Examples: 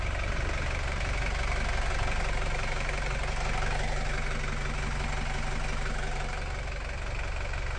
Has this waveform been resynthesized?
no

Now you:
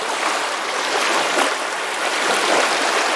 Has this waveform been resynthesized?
no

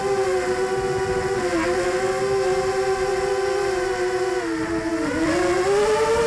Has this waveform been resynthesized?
no